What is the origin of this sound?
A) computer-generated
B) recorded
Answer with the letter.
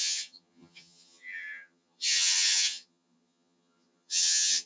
A